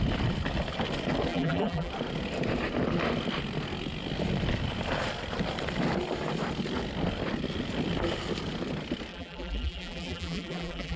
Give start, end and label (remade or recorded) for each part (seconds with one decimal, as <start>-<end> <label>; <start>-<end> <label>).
0.0-1.3 recorded; 1.3-1.9 remade; 1.9-9.1 recorded; 9.1-11.0 remade